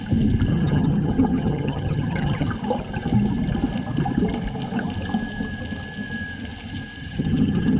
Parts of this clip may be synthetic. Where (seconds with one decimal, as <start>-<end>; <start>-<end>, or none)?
0.5-2.5; 7.0-7.8